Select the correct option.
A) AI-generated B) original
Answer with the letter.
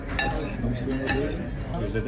B